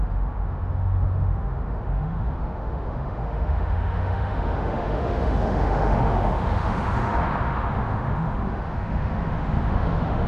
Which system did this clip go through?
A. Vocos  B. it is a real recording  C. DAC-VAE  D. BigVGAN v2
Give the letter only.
C